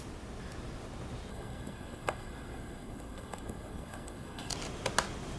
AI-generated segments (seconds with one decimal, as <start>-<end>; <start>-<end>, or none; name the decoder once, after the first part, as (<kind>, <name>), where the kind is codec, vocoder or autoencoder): 1.3-4.5 (codec, SNAC)